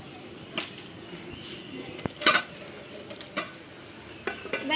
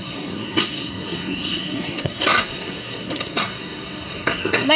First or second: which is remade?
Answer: second